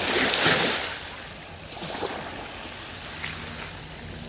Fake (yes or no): no